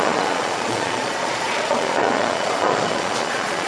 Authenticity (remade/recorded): remade